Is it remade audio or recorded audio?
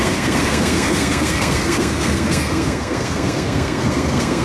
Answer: remade